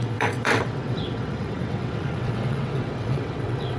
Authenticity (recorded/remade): remade